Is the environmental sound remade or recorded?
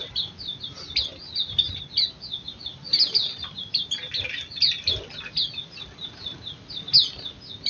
recorded